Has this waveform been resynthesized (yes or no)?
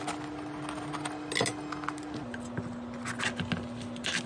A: no